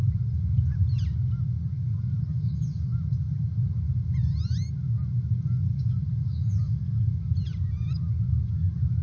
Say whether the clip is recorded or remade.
recorded